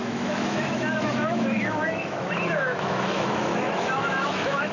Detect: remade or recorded remade